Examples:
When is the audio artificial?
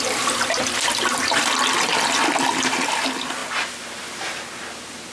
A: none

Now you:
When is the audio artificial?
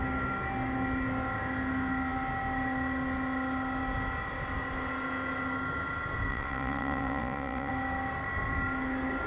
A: 6.3-7.7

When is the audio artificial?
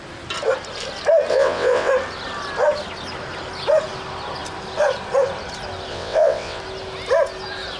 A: 1.3-1.9; 5.9-6.6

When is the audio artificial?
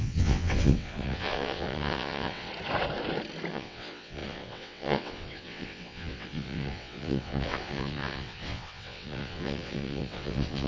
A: 0.0-2.5; 3.5-10.7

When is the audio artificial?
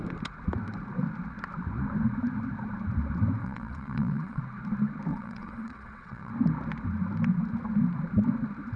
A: 3.4-4.4; 5.1-6.3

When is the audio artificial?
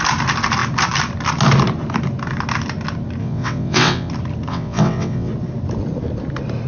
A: 3.2-4.1; 4.5-5.3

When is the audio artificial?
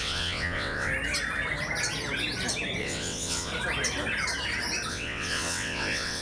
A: 0.0-0.9; 2.8-3.5; 4.9-6.2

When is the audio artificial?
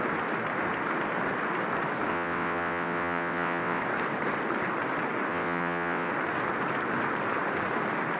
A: 2.1-3.8; 5.3-6.1